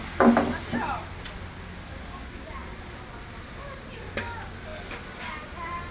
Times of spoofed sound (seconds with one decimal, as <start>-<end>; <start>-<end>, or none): none